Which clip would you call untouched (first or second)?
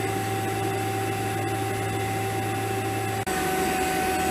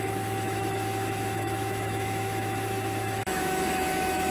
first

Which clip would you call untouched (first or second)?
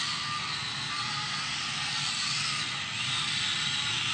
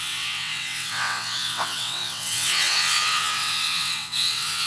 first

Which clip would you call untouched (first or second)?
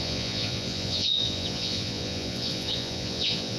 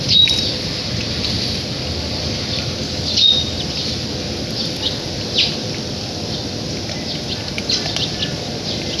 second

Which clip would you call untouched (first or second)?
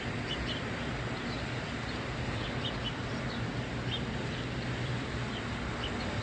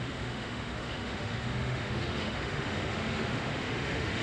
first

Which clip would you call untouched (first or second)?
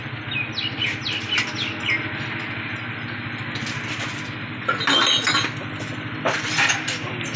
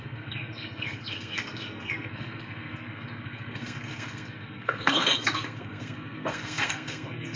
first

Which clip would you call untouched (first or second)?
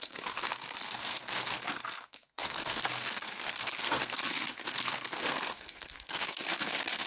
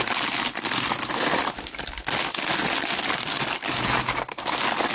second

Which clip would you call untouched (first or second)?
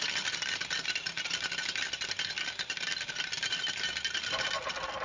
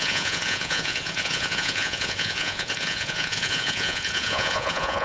first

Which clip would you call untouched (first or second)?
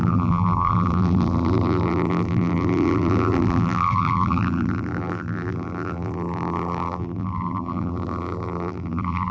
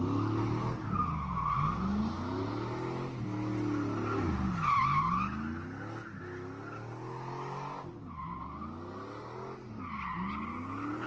second